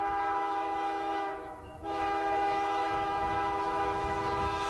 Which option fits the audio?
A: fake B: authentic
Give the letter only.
A